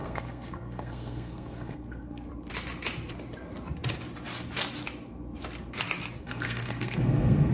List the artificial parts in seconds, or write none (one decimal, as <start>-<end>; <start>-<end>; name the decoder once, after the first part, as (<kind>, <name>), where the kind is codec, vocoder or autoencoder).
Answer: 0.0-2.3 (codec, SNAC); 6.2-7.5